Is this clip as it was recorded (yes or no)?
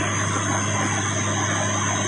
yes